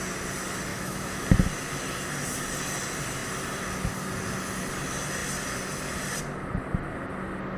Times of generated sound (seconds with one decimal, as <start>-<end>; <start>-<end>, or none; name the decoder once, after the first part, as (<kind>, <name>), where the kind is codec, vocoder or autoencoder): 0.7-1.2 (autoencoder, DAC-VAE)

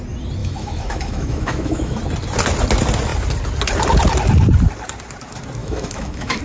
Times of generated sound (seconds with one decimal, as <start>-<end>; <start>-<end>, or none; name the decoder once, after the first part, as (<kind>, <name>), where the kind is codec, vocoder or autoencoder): 0.4-2.0 (autoencoder, DAC-VAE); 5.6-6.4

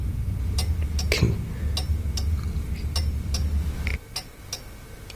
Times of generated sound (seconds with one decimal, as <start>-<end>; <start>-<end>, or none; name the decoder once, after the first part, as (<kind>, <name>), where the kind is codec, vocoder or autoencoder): none

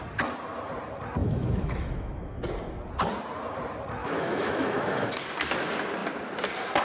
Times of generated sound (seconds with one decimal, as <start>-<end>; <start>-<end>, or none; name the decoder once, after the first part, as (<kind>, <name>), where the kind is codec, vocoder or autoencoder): 1.2-2.4 (autoencoder, DAC-VAE); 4.0-5.1

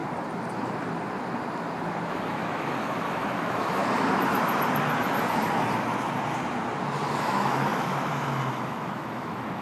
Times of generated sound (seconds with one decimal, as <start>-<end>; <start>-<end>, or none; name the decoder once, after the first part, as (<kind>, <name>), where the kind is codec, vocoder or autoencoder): 2.1-3.8 (autoencoder, DAC-VAE); 7.2-9.6

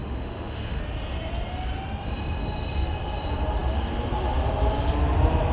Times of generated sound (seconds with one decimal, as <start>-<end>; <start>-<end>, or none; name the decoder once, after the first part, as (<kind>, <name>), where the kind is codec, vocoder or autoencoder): 0.0-0.8 (autoencoder, DAC-VAE)

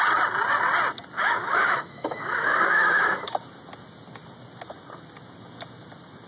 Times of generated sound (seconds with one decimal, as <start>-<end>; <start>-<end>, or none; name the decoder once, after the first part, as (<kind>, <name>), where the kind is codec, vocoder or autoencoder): 1.2-3.3 (autoencoder, DAC-VAE)